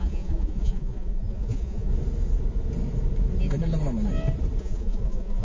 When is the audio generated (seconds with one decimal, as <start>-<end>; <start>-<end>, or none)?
0.0-1.9; 4.6-5.4